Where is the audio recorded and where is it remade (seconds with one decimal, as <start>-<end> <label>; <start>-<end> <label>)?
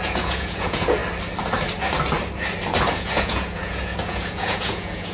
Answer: 0.0-1.0 remade; 1.0-2.9 recorded; 2.9-5.1 remade